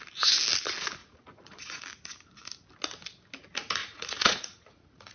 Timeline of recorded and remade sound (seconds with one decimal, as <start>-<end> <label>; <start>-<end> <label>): 0.0-1.0 recorded; 1.0-1.8 remade; 1.8-3.8 recorded; 3.8-5.1 remade